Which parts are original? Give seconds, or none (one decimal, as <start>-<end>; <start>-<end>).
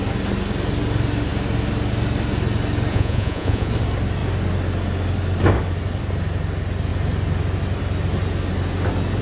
0.0-2.9; 3.7-9.2